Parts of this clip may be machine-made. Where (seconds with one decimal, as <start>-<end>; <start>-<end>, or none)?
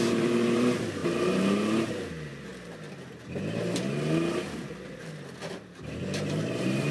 0.0-1.0; 1.9-2.5; 6.0-6.9